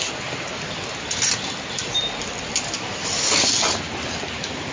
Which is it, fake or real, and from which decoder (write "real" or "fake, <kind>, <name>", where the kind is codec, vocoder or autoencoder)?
real